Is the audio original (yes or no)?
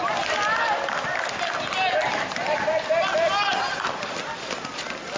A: yes